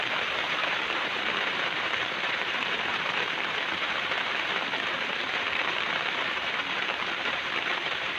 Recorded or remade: remade